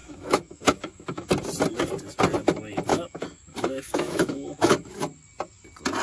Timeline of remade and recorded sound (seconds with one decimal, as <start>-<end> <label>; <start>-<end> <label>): 0.0-1.3 remade; 1.3-2.9 recorded; 2.9-5.0 remade; 5.0-6.0 recorded